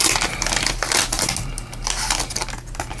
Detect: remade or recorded recorded